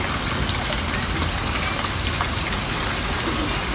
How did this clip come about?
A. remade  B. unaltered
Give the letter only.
B